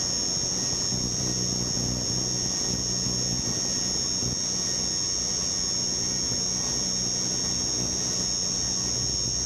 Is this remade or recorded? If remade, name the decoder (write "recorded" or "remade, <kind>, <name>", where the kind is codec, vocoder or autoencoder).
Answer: recorded